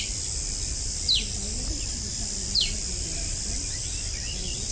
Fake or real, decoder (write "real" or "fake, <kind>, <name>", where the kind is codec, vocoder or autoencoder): real